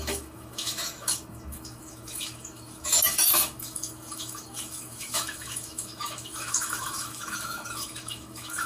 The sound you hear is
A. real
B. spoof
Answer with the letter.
B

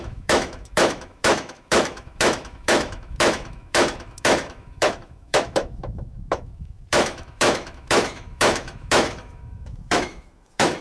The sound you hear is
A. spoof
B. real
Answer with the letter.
A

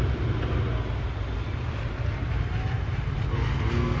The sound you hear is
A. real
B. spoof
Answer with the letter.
A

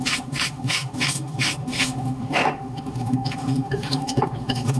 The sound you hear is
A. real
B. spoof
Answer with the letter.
B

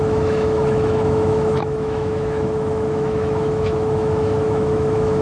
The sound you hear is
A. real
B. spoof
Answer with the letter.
B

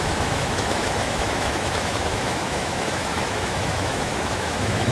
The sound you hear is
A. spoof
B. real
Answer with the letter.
A